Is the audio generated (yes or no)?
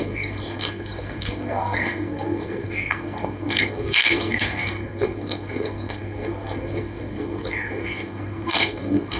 yes